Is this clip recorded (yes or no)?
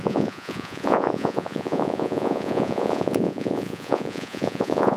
no